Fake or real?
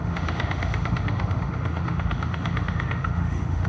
fake